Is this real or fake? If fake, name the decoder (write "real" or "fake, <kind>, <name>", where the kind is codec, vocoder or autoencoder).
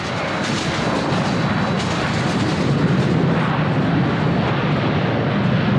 real